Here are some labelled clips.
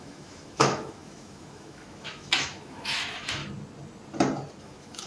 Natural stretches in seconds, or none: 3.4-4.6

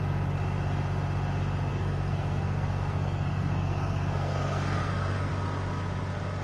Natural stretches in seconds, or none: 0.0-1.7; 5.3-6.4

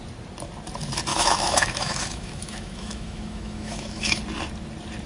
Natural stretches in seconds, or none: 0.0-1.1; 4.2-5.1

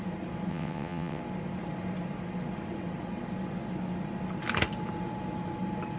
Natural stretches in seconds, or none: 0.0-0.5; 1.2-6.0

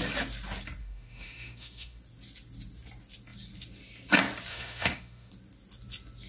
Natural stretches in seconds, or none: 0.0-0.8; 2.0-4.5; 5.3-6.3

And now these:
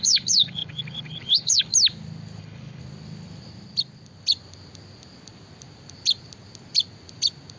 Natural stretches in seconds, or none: 1.7-2.4; 2.8-7.6

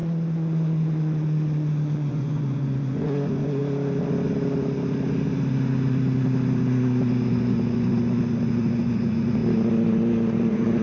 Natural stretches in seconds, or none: 0.0-2.1; 3.6-7.3; 9.4-10.4

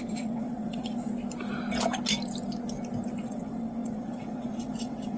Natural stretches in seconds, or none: 0.9-3.2